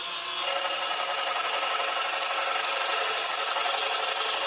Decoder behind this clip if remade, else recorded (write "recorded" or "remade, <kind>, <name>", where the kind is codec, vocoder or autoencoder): recorded